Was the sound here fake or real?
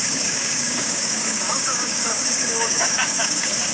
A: fake